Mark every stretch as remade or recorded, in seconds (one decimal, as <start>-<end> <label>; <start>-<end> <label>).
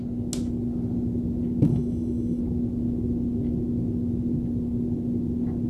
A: 0.0-1.7 recorded; 1.7-2.4 remade; 2.4-5.7 recorded